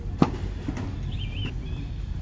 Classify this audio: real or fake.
real